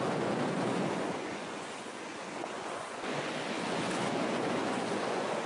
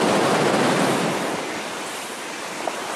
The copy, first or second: first